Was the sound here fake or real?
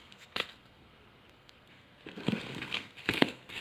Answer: fake